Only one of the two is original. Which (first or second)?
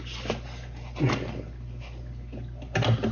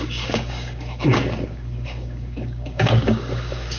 first